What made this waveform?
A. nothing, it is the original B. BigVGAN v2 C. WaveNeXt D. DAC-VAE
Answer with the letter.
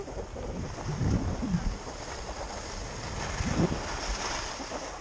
A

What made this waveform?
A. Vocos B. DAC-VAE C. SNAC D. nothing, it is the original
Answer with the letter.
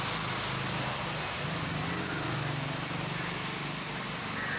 D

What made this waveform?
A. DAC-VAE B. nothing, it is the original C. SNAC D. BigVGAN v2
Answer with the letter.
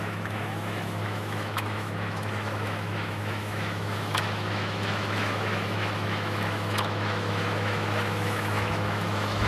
A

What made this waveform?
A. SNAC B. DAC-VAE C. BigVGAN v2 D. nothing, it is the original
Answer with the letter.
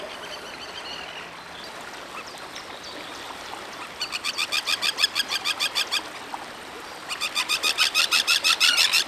D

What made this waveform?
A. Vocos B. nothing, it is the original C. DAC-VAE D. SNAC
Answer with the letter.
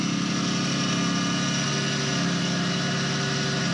B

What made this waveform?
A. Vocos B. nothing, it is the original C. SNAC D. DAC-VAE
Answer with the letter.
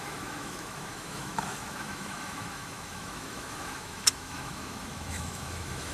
D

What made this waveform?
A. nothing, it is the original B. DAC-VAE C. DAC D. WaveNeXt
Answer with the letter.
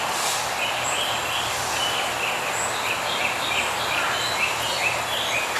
A